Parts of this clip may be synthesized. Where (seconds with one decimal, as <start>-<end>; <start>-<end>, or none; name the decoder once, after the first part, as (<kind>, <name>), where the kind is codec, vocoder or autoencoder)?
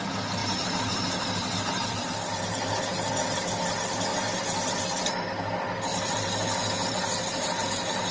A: 0.4-2.7 (vocoder, BigVGAN v2); 4.1-4.8; 5.9-8.1